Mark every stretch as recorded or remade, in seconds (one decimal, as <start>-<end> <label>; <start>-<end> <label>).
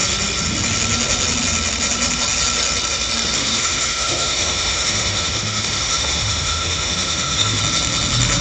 0.0-3.4 recorded; 3.4-7.6 remade; 7.6-8.4 recorded